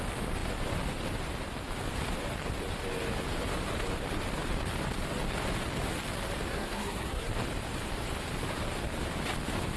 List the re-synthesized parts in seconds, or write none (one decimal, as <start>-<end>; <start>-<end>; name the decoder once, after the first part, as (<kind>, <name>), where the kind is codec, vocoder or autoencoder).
6.5-7.3 (codec, SNAC)